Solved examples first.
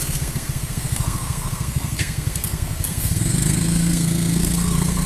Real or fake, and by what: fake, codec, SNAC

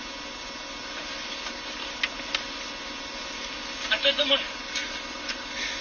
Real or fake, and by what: real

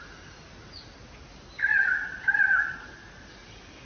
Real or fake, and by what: real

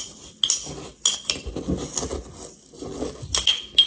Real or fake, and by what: real